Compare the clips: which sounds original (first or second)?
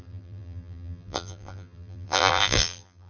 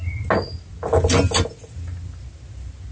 second